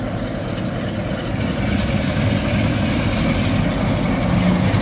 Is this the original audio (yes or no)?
yes